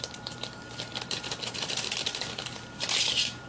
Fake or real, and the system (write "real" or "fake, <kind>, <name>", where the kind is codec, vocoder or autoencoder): fake, vocoder, BigVGAN v2